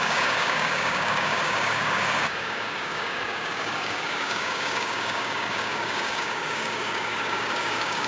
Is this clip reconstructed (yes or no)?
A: yes